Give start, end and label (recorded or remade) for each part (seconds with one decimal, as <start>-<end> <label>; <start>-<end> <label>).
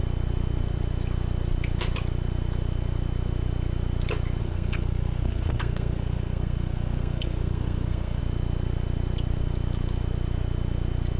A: 0.0-4.4 recorded; 4.4-8.2 remade; 8.2-11.2 recorded